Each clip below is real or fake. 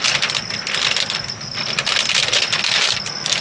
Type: real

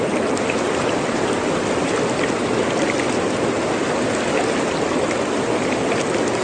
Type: real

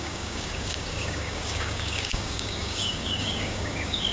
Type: fake